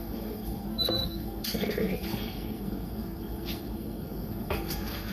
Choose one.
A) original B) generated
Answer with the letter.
B